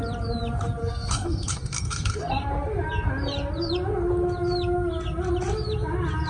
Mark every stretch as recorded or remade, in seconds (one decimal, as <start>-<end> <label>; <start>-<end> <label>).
0.0-0.8 recorded; 0.8-2.5 remade; 2.5-6.3 recorded